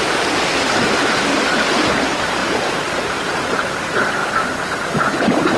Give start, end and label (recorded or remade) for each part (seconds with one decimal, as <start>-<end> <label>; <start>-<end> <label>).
0.0-2.4 recorded; 2.4-3.8 remade; 3.8-4.2 recorded; 4.2-5.6 remade